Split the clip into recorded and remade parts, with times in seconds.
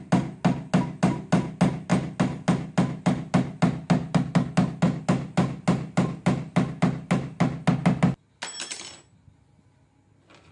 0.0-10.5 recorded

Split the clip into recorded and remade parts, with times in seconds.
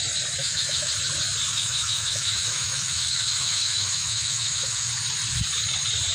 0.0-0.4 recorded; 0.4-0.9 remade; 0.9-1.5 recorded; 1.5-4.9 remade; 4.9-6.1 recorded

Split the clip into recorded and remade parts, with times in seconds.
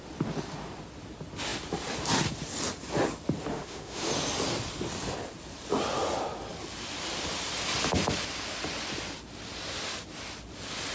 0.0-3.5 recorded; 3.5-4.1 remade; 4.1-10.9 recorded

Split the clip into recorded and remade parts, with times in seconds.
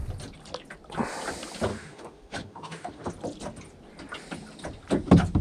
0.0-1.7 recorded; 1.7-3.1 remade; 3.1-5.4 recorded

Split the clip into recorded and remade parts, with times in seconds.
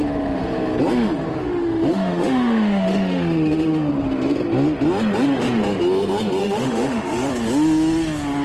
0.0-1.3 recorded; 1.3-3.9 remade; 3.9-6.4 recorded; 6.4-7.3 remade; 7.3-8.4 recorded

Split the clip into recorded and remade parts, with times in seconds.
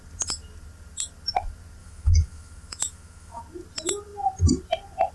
0.0-1.8 recorded; 1.8-3.4 remade; 3.4-5.1 recorded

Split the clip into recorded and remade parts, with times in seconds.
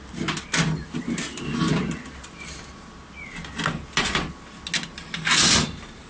0.0-6.1 recorded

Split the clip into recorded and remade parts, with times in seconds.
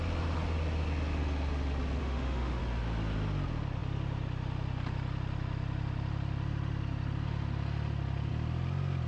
0.0-2.0 recorded; 2.0-2.6 remade; 2.6-9.1 recorded